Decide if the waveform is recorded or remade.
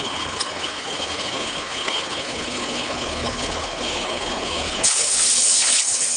remade